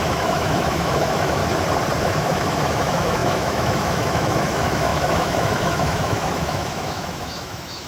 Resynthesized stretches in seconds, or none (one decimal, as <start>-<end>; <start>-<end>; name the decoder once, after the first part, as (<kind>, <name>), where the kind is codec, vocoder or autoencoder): 0.0-1.4 (autoencoder, DAC-VAE); 2.0-7.9